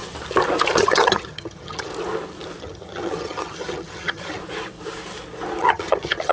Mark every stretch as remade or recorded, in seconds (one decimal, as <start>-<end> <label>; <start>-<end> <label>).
0.0-0.7 recorded; 0.7-1.9 remade; 1.9-2.6 recorded; 2.6-4.4 remade; 4.4-5.6 recorded; 5.6-6.3 remade